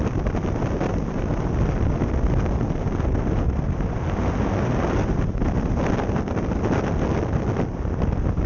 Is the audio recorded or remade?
recorded